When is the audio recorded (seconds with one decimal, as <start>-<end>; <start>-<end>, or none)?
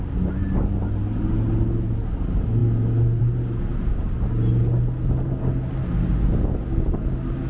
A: 0.0-7.5